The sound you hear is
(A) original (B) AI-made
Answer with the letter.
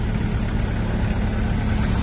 A